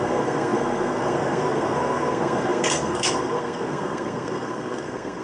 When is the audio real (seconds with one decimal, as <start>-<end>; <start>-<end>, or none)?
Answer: none

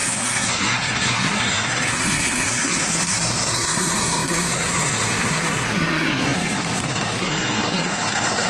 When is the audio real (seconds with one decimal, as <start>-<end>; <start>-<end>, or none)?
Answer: none